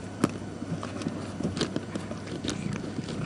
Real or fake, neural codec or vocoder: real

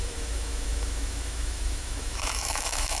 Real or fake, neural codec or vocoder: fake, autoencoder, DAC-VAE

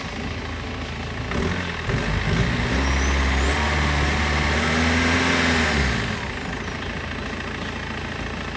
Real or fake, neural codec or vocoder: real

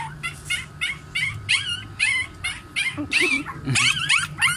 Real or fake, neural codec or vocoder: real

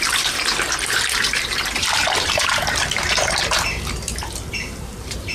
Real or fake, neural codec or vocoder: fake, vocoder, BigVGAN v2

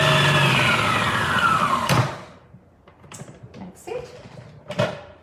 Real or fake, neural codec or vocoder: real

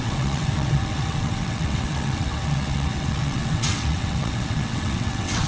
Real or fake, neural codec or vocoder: fake, vocoder, WaveNeXt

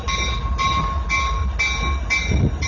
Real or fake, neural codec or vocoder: real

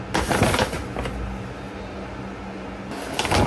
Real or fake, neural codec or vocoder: real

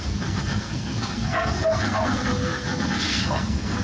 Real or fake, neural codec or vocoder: fake, codec, SNAC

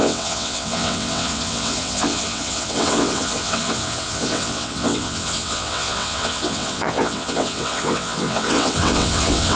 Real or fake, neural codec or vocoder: fake, vocoder, WaveNeXt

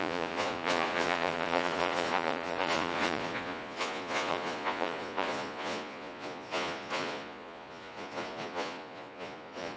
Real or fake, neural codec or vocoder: fake, vocoder, Vocos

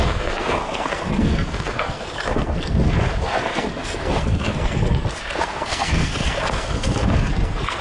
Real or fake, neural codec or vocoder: fake, codec, SNAC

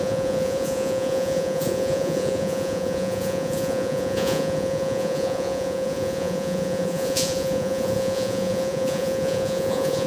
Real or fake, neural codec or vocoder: fake, vocoder, Vocos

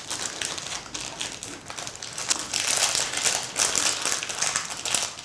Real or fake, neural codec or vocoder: real